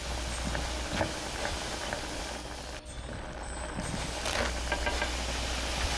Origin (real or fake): real